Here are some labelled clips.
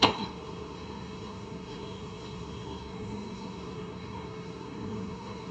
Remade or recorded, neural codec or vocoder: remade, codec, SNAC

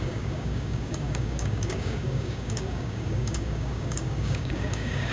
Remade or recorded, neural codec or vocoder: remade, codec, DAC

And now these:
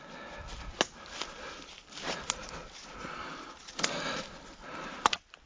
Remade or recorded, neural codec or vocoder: recorded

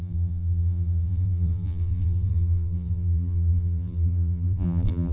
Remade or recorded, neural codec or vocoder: remade, vocoder, BigVGAN v2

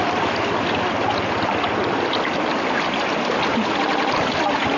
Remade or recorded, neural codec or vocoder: recorded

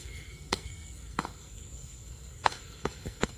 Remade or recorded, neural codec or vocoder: remade, codec, SNAC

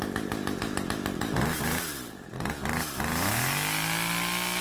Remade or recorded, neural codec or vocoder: recorded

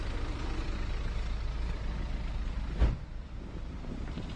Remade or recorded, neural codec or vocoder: remade, vocoder, BigVGAN v2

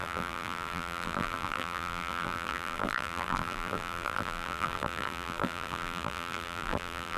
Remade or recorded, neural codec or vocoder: remade, vocoder, BigVGAN v2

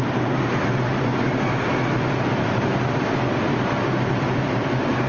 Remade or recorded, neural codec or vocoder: recorded